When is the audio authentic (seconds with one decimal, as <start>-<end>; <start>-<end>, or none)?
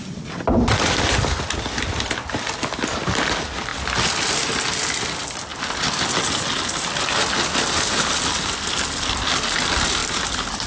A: 0.0-10.7